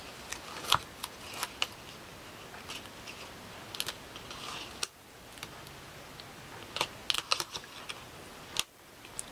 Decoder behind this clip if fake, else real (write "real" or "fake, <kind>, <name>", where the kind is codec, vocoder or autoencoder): real